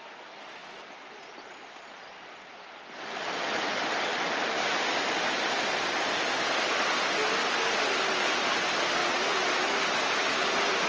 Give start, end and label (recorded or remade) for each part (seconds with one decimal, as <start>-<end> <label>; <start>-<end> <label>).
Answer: 0.0-10.9 recorded